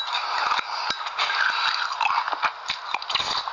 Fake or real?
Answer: real